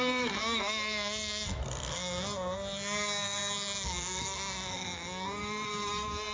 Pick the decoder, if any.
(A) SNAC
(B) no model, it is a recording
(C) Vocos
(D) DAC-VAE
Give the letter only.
A